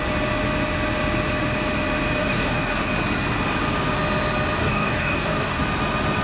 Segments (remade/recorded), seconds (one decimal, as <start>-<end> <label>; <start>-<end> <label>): 0.0-2.2 recorded; 2.2-2.9 remade; 2.9-4.6 recorded; 4.6-5.6 remade; 5.6-6.2 recorded